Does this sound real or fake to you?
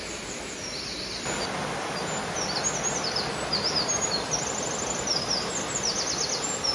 real